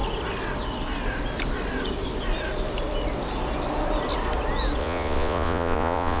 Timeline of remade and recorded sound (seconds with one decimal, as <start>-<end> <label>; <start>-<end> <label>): 0.0-4.8 recorded; 4.8-6.2 remade